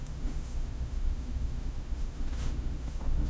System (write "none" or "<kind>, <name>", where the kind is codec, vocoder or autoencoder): autoencoder, DAC-VAE